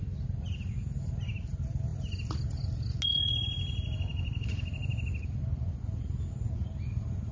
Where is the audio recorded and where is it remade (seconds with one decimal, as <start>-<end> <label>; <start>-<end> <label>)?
0.0-4.1 recorded; 4.1-4.9 remade; 4.9-5.4 recorded; 5.4-6.5 remade; 6.5-7.3 recorded